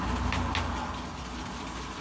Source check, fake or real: real